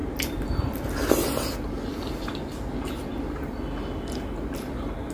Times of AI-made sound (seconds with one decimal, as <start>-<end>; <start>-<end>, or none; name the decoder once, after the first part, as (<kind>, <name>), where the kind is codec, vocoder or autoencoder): none